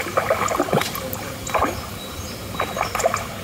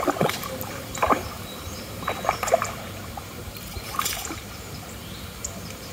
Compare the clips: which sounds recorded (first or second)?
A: first